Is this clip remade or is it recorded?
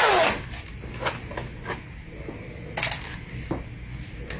recorded